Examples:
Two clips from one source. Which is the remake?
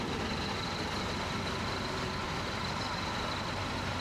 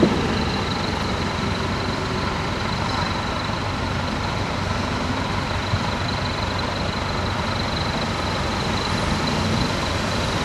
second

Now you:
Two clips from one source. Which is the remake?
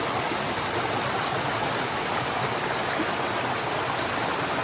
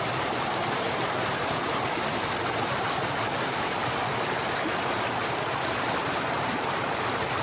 second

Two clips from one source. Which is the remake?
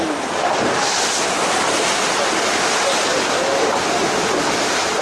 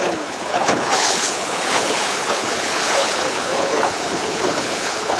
second